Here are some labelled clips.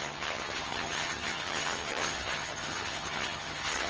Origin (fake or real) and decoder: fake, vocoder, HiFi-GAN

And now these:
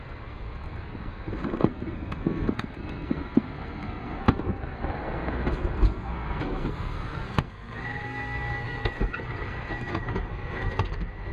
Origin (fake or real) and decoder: fake, codec, SNAC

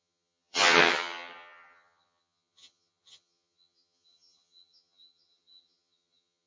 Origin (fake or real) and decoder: fake, vocoder, HiFi-GAN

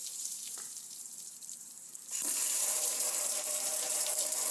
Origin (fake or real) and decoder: fake, vocoder, BigVGAN v2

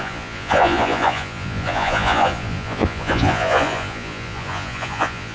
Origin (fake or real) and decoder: fake, vocoder, Vocos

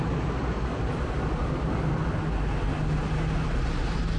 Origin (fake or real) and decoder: real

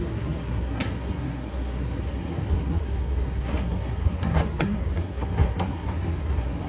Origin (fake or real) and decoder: fake, codec, SNAC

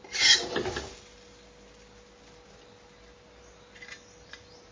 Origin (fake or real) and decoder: real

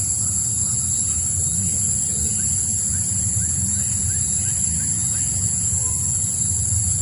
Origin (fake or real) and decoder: fake, vocoder, BigVGAN v2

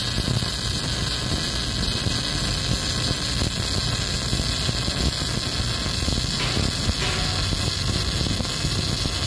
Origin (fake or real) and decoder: real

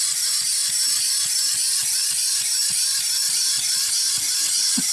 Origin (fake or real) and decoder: real